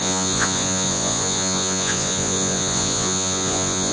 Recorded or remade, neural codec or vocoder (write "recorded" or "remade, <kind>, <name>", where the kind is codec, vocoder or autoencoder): remade, vocoder, Vocos